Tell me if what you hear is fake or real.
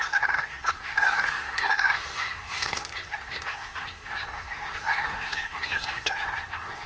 fake